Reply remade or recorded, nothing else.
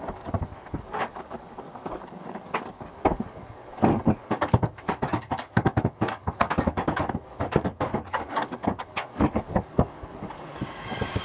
remade